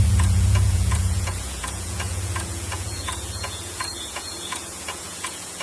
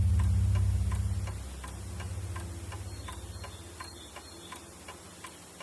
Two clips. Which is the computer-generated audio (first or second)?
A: first